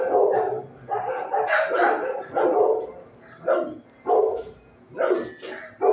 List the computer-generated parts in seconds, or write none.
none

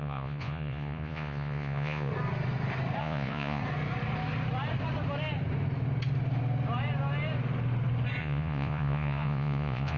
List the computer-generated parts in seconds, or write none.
0.0-2.1; 3.0-3.6; 8.2-10.0

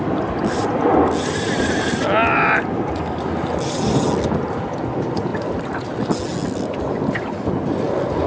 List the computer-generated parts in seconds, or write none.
none

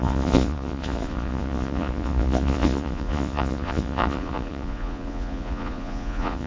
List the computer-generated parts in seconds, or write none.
0.0-6.5